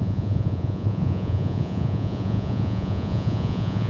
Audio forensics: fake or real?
fake